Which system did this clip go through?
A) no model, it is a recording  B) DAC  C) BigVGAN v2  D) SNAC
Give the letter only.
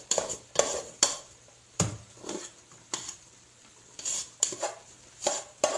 C